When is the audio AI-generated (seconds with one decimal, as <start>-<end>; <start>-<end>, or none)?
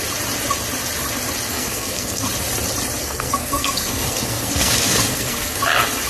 1.5-2.3; 3.0-5.6